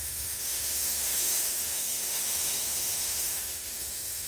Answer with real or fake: fake